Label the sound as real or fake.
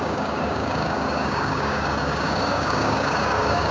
fake